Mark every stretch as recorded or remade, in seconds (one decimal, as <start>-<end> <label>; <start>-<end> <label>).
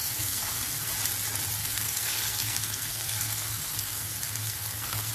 0.0-0.9 remade; 0.9-1.6 recorded; 1.6-5.1 remade